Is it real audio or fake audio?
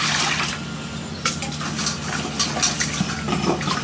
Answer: real